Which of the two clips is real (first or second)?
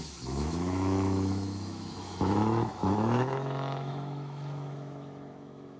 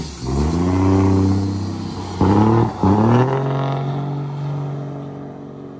second